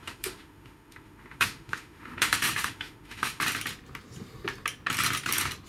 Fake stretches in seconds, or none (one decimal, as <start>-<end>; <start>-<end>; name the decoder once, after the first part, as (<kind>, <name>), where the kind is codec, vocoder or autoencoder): 0.0-3.4 (autoencoder, DAC-VAE)